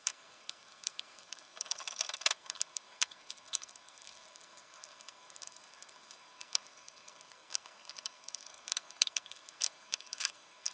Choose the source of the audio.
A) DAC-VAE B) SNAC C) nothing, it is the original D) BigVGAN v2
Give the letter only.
B